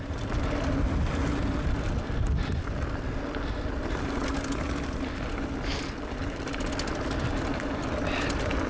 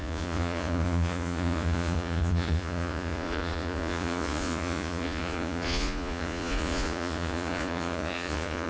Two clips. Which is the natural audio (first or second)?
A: first